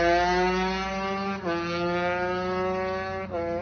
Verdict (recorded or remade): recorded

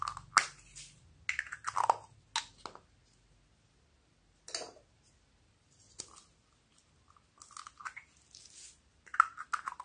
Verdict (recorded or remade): recorded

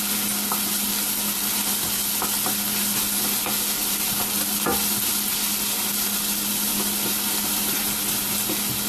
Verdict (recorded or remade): recorded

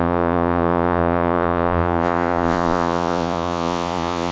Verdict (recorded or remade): remade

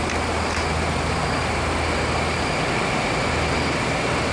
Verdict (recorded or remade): recorded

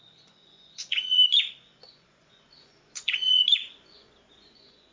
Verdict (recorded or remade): remade